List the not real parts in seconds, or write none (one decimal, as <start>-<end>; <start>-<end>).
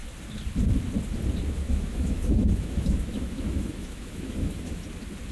1.6-4.8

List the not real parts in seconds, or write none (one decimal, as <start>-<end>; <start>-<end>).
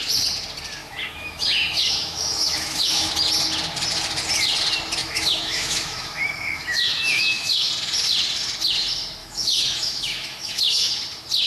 0.8-3.1; 5.0-7.7; 9.2-10.9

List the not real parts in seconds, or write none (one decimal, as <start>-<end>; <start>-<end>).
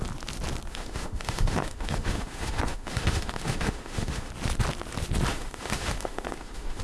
0.7-4.3; 5.3-6.8